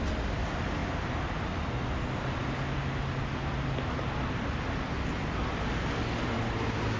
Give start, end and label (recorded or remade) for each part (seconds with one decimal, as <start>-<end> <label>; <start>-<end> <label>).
0.0-7.0 recorded